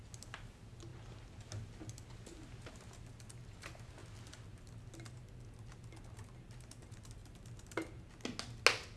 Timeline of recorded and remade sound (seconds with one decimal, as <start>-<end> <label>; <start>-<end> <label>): 0.0-9.0 recorded